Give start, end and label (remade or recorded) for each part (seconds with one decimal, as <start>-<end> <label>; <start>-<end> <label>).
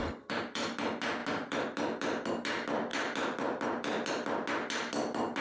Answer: 0.0-5.4 recorded